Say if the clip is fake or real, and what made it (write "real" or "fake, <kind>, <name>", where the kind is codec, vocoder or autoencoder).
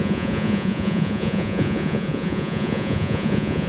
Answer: fake, vocoder, Vocos